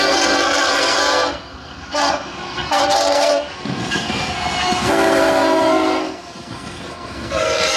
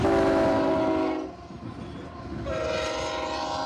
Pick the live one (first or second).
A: second